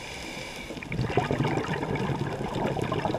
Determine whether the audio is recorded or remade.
recorded